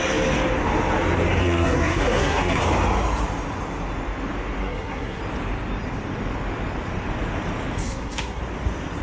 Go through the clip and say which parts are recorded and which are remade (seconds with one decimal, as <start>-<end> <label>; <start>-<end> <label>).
0.0-1.4 recorded; 1.4-2.6 remade; 2.6-4.6 recorded; 4.6-5.2 remade; 5.2-7.8 recorded; 7.8-8.4 remade; 8.4-9.0 recorded